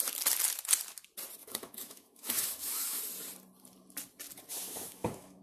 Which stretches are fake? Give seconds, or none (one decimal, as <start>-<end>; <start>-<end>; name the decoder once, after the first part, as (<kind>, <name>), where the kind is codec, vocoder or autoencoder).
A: 1.4-3.0 (autoencoder, DAC-VAE); 4.5-5.4

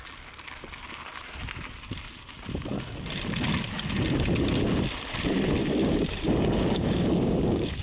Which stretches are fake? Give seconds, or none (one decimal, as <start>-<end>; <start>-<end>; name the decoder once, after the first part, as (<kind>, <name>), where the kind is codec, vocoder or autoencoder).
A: 5.6-7.8 (codec, DAC)

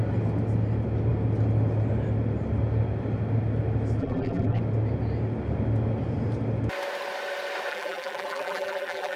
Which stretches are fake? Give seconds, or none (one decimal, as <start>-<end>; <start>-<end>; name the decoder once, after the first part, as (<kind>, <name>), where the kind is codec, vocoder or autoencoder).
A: 4.0-4.6 (vocoder, BigVGAN v2); 7.7-9.2

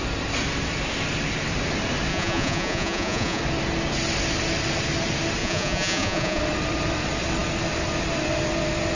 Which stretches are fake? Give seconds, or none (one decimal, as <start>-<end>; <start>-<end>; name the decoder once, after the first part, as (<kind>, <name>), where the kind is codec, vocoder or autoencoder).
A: 2.1-3.4 (vocoder, Vocos); 5.4-6.4

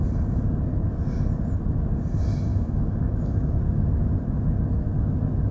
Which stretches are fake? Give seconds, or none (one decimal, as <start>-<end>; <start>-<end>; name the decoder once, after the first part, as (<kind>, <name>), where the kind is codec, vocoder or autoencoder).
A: 2.5-3.6 (autoencoder, DAC-VAE)